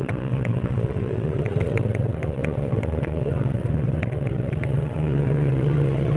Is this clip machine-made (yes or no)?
yes